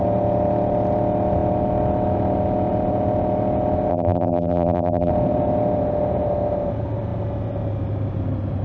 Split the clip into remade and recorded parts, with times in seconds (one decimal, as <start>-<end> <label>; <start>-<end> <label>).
0.0-3.9 recorded; 3.9-5.1 remade; 5.1-8.6 recorded

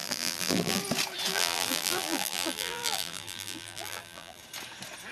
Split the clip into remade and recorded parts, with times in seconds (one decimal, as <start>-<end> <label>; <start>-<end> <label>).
0.0-0.8 remade; 0.8-1.3 recorded; 1.3-4.4 remade; 4.4-5.1 recorded

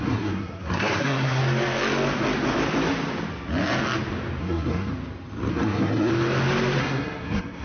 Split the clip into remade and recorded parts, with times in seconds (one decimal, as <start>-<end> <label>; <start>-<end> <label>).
0.0-1.4 remade; 1.4-4.4 recorded; 4.4-4.9 remade; 4.9-5.5 recorded; 5.5-6.1 remade; 6.1-6.8 recorded; 6.8-7.6 remade

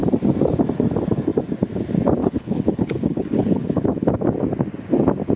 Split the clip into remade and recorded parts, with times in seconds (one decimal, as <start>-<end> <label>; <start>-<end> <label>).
0.0-2.2 recorded; 2.2-3.8 remade; 3.8-5.4 recorded

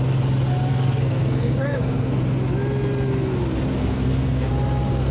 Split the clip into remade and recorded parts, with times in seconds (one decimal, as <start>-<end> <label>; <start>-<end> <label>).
0.0-0.7 recorded; 0.7-2.2 remade; 2.2-3.8 recorded; 3.8-4.5 remade; 4.5-5.1 recorded

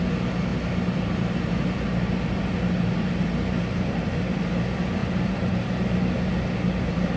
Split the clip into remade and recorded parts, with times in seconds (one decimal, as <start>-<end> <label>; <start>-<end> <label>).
0.0-0.5 recorded; 0.5-4.6 remade; 4.6-5.0 recorded; 5.0-5.7 remade; 5.7-7.2 recorded

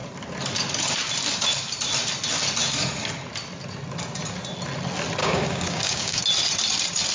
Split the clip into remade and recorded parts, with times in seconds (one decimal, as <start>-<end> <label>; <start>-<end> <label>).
0.0-5.2 recorded; 5.2-6.2 remade; 6.2-7.1 recorded